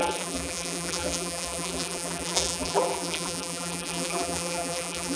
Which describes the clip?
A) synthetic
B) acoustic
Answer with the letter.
A